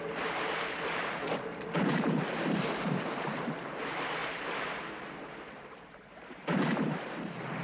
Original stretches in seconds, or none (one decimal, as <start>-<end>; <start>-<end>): none